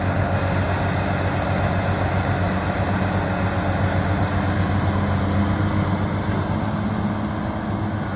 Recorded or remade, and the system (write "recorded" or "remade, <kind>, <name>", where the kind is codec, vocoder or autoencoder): recorded